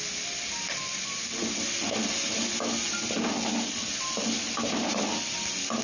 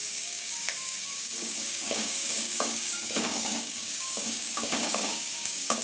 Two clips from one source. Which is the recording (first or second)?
first